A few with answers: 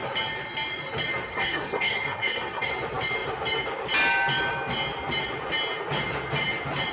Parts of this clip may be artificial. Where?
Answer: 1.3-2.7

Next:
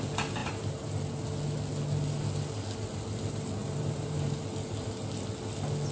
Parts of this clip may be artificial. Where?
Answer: 0.4-0.9; 3.6-4.4

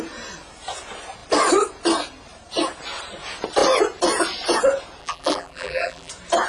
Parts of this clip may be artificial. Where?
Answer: 5.0-6.1

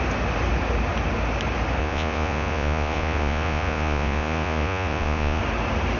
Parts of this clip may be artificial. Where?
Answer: 1.8-5.4

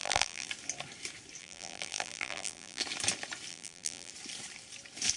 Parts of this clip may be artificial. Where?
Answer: 0.0-0.5; 1.4-2.8; 3.5-4.1